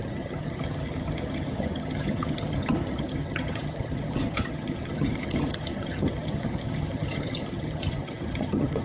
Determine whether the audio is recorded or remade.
remade